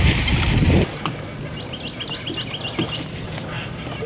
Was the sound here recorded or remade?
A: recorded